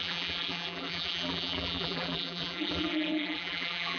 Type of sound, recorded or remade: remade